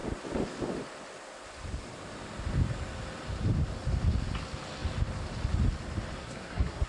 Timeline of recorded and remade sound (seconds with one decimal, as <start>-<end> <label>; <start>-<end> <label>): 0.0-6.2 recorded; 6.2-6.9 remade